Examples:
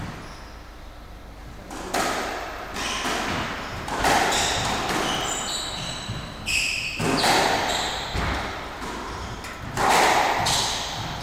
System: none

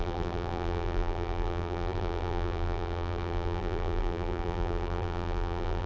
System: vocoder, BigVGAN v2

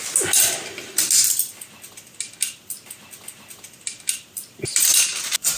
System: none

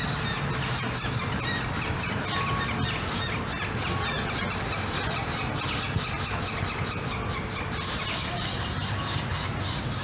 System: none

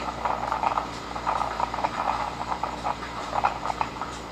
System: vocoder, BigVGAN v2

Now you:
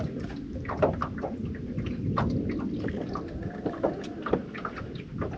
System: none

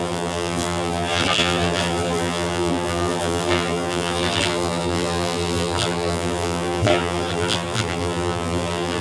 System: vocoder, BigVGAN v2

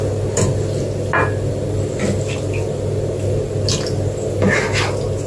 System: none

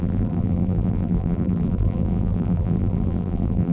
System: vocoder, BigVGAN v2